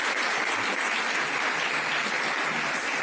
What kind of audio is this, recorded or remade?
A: recorded